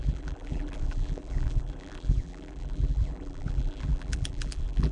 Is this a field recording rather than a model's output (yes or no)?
no